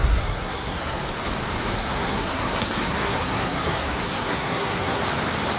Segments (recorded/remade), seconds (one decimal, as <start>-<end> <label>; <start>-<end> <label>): 0.0-1.0 remade; 1.0-1.6 recorded; 1.6-5.0 remade; 5.0-5.6 recorded